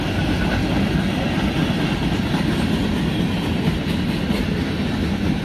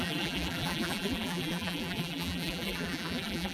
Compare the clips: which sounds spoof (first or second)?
second